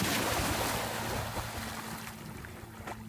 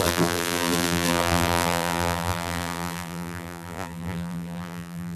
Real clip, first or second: first